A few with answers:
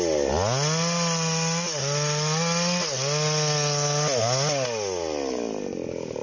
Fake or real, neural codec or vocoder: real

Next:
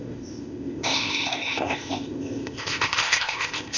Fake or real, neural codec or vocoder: fake, codec, ZipCodec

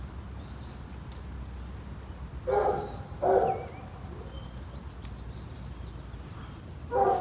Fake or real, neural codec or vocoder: real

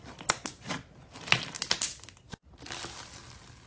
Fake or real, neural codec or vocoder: real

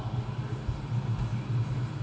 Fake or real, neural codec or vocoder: real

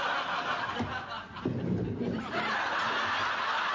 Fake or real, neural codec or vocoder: real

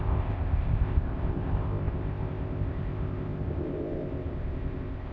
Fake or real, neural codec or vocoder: fake, codec, ZipCodec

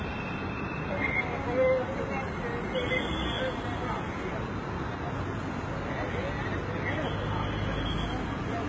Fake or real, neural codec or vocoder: real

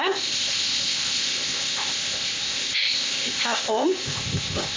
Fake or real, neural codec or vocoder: fake, codec, ZipCodec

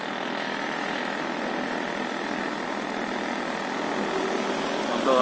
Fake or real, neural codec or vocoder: real